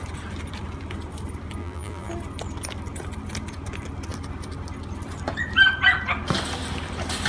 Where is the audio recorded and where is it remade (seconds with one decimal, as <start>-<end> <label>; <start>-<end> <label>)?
0.0-1.6 recorded; 1.6-2.1 remade; 2.1-7.3 recorded